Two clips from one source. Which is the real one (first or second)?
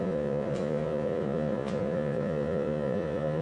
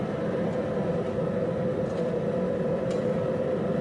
second